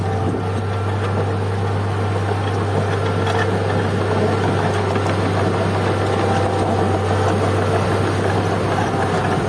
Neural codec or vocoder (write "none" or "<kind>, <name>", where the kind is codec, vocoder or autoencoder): none